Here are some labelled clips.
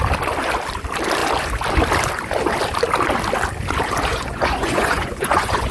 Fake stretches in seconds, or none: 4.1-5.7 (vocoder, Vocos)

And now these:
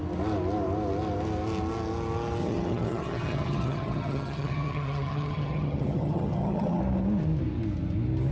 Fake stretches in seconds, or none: 2.4-6.8 (vocoder, HiFi-GAN)